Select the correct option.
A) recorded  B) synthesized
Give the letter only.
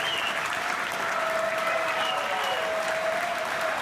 A